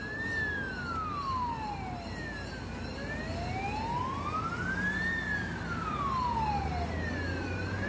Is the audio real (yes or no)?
yes